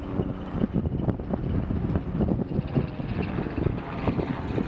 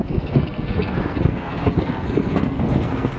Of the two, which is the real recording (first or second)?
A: first